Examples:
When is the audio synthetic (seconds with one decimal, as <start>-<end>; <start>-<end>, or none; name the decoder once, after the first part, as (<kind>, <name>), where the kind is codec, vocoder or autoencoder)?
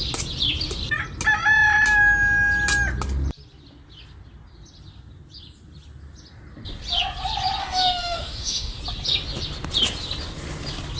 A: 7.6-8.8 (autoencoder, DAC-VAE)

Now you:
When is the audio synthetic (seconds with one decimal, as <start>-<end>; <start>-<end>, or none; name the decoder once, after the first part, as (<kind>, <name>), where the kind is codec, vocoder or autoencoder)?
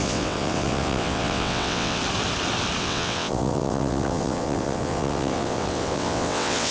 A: 0.0-2.0 (vocoder, WaveNeXt); 2.8-6.7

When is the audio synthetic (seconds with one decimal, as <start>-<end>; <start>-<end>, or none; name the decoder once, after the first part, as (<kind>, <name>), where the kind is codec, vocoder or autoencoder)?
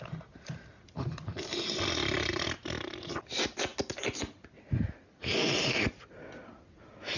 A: none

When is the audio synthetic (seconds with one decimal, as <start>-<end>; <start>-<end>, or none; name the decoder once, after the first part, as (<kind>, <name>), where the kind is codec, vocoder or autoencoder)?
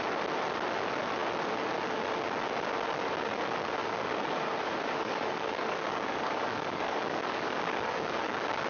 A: 3.8-8.7 (codec, DAC)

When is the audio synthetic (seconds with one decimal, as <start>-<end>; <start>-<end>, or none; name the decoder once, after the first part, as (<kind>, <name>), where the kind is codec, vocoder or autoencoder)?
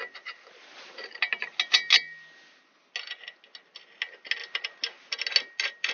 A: none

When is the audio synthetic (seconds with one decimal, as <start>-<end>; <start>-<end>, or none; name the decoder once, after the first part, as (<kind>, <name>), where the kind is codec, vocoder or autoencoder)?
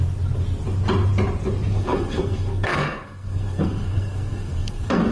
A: 1.7-5.1 (codec, SNAC)